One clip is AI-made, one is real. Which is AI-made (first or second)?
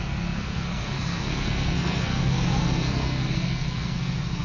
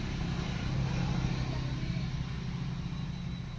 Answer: first